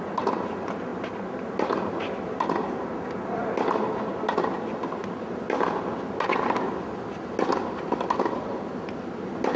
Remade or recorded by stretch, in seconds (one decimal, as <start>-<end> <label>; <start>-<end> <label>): 0.0-9.6 recorded